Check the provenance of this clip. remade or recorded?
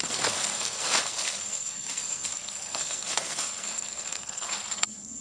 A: remade